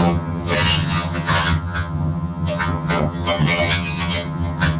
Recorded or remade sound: remade